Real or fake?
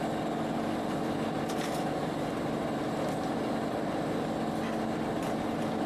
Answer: real